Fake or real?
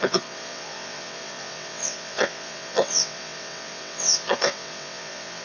fake